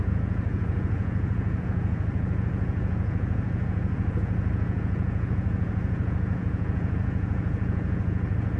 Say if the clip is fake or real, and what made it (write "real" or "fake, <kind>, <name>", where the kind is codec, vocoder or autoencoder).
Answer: fake, vocoder, Vocos